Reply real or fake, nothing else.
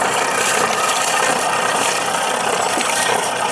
real